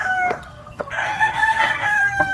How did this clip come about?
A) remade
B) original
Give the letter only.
A